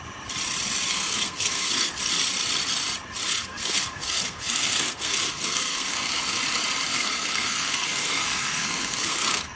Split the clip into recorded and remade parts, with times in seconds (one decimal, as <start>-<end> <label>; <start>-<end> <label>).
0.0-0.9 recorded; 0.9-2.0 remade; 2.0-3.3 recorded; 3.3-6.4 remade; 6.4-6.9 recorded; 6.9-9.6 remade

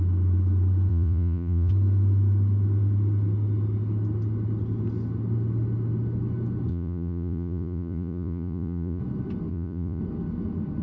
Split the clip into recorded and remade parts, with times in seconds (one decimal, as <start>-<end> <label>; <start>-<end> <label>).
0.0-0.9 recorded; 0.9-1.7 remade; 1.7-6.7 recorded; 6.7-9.0 remade; 9.0-9.5 recorded; 9.5-10.0 remade; 10.0-10.8 recorded

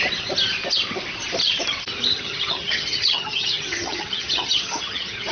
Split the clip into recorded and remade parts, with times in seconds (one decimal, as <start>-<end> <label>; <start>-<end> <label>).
0.0-2.1 recorded; 2.1-5.3 remade

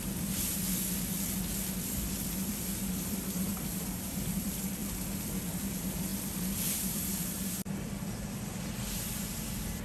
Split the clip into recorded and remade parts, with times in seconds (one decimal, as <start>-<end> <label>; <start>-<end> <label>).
0.0-0.5 remade; 0.5-1.8 recorded; 1.8-9.8 remade

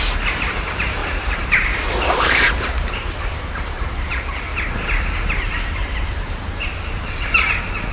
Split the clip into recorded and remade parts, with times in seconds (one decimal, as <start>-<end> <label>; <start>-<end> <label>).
0.0-4.5 remade; 4.5-5.4 recorded; 5.4-7.9 remade

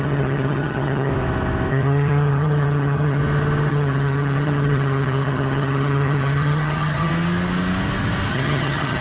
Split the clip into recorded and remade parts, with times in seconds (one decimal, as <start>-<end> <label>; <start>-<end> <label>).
0.0-1.1 remade; 1.1-1.7 recorded; 1.7-3.2 remade; 3.2-3.7 recorded; 3.7-7.1 remade; 7.1-8.3 recorded; 8.3-9.0 remade